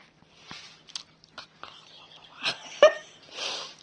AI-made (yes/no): no